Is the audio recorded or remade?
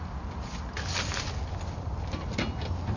recorded